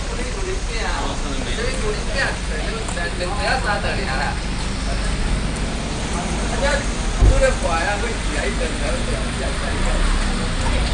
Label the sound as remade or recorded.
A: recorded